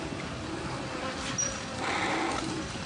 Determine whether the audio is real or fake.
real